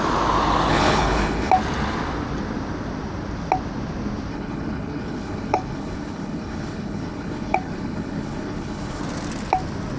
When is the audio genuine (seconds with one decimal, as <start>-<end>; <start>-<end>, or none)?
0.0-0.7; 1.5-4.3; 9.0-10.0